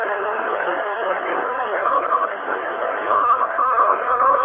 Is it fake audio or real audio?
fake